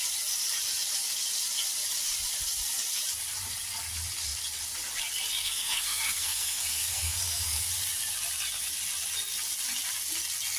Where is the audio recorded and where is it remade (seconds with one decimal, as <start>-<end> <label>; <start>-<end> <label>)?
0.0-5.4 recorded; 5.4-7.7 remade; 7.7-10.6 recorded